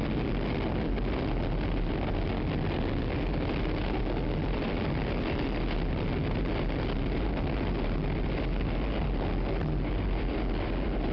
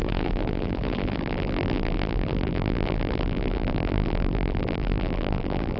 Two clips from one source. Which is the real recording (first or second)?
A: first